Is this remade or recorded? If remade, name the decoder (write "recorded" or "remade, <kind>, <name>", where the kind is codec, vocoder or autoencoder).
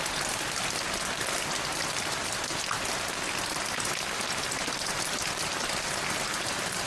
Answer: recorded